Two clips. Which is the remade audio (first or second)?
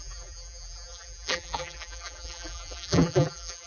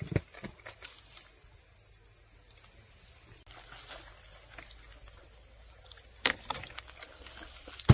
first